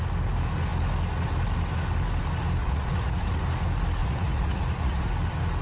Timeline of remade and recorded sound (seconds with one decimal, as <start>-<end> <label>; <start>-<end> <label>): 0.0-2.6 recorded; 2.6-3.4 remade; 3.4-4.0 recorded; 4.0-5.1 remade; 5.1-5.6 recorded